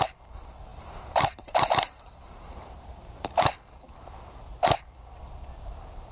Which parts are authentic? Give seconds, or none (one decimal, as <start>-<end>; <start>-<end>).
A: 4.5-5.2